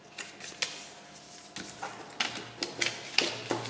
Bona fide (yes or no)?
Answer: yes